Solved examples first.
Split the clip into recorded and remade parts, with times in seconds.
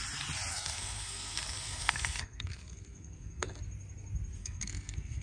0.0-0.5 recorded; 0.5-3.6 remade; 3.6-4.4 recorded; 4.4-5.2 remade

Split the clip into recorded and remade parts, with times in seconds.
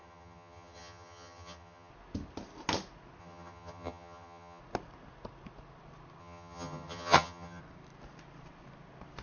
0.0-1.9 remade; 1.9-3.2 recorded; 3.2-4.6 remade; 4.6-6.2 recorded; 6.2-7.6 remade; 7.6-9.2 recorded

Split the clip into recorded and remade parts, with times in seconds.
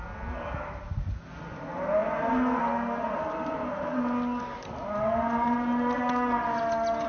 0.0-7.1 recorded